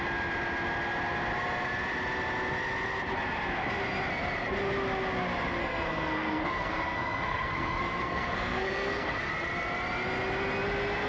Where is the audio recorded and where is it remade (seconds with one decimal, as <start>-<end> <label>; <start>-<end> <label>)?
0.0-5.6 recorded; 5.6-9.3 remade; 9.3-11.1 recorded